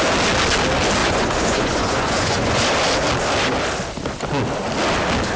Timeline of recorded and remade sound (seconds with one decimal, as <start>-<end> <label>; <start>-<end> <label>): 0.0-1.0 recorded; 1.0-2.6 remade; 2.6-5.4 recorded